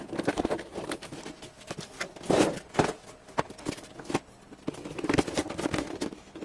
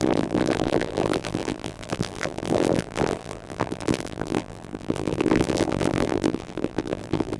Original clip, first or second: first